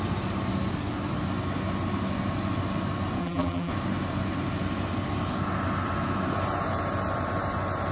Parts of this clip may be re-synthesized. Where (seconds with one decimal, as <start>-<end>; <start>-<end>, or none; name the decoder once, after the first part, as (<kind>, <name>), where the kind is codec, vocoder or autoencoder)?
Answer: 3.2-3.7 (vocoder, BigVGAN v2)